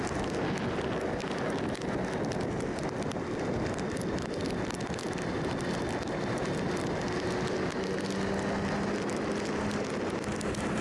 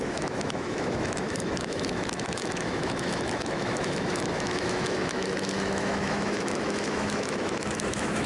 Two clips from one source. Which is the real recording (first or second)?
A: first